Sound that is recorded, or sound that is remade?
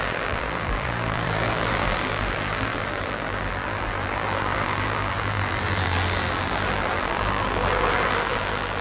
remade